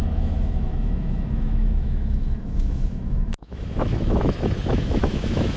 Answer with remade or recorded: remade